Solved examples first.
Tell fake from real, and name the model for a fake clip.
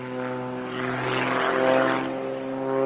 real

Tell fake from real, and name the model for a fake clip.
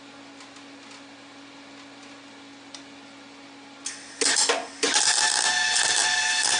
real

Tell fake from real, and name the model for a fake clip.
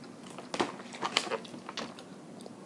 real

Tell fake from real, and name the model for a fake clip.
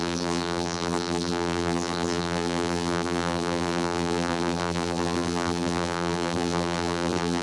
fake, vocoder, BigVGAN v2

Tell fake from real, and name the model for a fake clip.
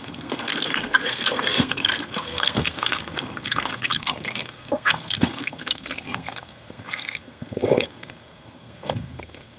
fake, codec, SNAC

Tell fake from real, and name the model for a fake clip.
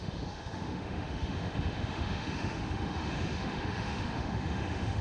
fake, autoencoder, DAC-VAE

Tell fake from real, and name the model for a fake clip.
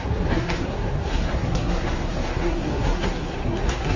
fake, codec, SNAC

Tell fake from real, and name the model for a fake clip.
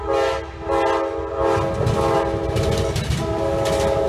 real